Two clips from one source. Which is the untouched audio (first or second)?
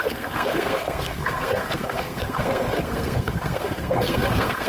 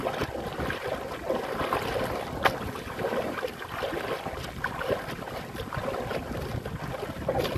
second